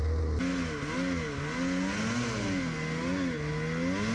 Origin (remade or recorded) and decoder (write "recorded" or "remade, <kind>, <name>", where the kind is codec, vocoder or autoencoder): recorded